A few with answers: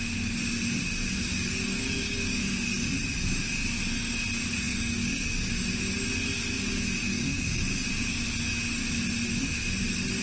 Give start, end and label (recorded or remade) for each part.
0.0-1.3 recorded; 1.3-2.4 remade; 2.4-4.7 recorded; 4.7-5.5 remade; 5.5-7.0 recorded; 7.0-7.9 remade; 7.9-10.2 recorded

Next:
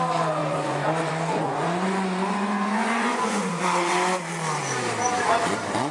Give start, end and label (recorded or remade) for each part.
0.0-0.4 recorded; 0.4-3.9 remade; 3.9-5.9 recorded

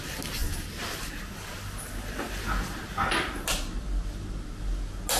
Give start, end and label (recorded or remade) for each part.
0.0-5.2 recorded

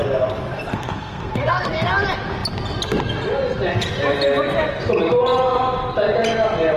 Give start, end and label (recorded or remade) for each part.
0.0-0.7 recorded; 0.7-1.7 remade; 1.7-6.8 recorded

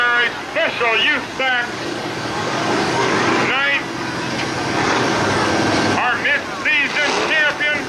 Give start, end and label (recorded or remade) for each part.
0.0-1.3 recorded; 1.3-3.3 remade; 3.3-4.8 recorded; 4.8-5.5 remade; 5.5-7.9 recorded

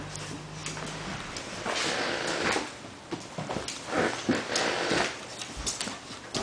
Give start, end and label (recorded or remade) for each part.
0.0-6.4 recorded

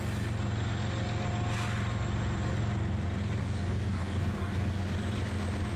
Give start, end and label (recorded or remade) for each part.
0.0-3.4 recorded; 3.4-4.8 remade; 4.8-5.8 recorded